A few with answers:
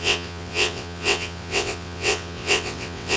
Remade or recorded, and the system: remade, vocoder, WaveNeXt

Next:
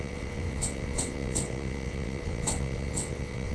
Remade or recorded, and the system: remade, vocoder, WaveNeXt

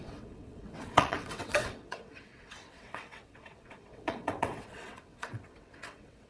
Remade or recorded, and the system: remade, vocoder, WaveNeXt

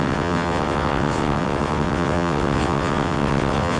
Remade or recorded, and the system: remade, vocoder, WaveNeXt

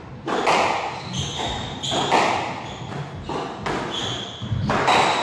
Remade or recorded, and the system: recorded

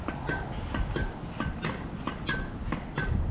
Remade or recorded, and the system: recorded